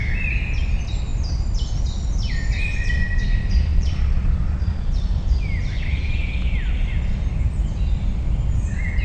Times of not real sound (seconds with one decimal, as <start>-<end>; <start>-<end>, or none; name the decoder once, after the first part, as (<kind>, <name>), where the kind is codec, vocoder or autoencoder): 3.7-5.3 (vocoder, Vocos)